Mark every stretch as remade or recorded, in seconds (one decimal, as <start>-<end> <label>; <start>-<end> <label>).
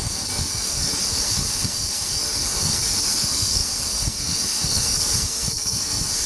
0.0-6.3 remade